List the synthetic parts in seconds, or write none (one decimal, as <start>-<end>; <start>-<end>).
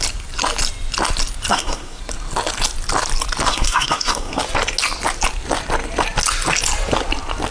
1.5-2.0; 3.5-4.4